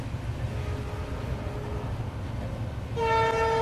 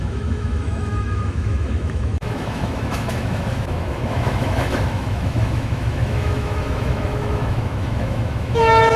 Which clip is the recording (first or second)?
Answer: first